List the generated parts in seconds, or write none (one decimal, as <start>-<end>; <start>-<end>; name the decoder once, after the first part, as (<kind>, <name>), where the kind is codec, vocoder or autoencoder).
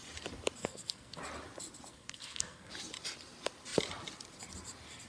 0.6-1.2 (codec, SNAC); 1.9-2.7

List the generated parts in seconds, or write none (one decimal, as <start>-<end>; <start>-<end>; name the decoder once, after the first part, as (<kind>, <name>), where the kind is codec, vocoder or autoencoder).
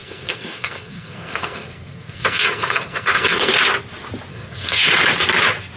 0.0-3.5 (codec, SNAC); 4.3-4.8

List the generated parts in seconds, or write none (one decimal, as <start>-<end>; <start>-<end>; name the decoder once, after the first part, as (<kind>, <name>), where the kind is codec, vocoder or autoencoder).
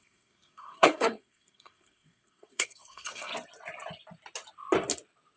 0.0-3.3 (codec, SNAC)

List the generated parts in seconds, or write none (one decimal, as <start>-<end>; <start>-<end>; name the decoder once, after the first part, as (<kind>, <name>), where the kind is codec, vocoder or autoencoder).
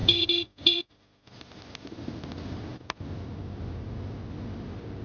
none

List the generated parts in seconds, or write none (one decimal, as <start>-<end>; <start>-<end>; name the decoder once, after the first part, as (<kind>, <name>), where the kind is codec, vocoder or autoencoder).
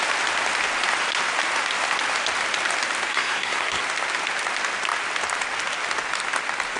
3.1-3.8 (codec, SNAC)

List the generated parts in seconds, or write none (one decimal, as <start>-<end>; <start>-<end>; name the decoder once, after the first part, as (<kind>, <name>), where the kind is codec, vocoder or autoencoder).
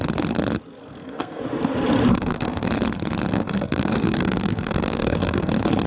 0.8-1.4 (codec, SNAC); 2.1-2.7; 3.3-5.5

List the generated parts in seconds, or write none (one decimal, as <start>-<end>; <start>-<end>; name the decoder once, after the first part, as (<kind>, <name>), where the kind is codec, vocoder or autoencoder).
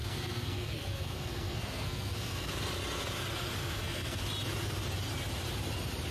0.0-2.5 (codec, SNAC); 3.6-4.2